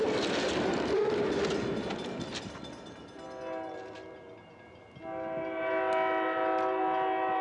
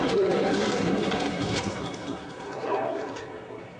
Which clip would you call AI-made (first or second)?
second